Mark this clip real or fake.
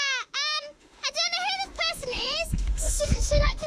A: fake